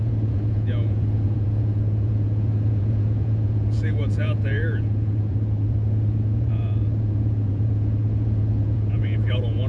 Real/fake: fake